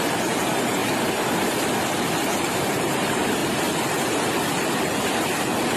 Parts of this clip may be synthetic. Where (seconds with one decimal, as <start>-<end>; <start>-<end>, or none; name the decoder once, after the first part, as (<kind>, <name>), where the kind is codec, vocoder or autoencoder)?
0.0-0.8 (vocoder, BigVGAN v2); 2.8-3.4